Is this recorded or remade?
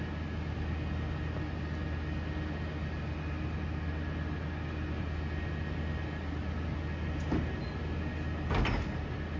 recorded